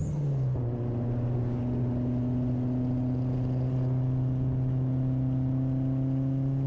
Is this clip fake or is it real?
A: real